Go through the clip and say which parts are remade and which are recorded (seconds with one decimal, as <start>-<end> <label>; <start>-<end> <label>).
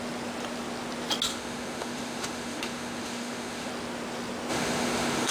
0.0-1.3 recorded; 1.3-3.7 remade; 3.7-4.5 recorded; 4.5-5.3 remade